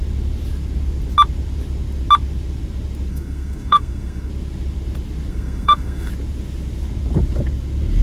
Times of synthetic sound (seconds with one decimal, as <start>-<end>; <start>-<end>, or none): 3.1-4.3; 5.3-6.1